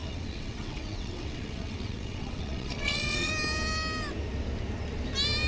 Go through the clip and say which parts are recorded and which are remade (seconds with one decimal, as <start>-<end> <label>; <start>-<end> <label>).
0.0-3.3 remade; 3.3-5.5 recorded